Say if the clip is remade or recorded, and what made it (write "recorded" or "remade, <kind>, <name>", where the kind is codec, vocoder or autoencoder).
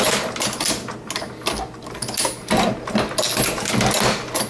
recorded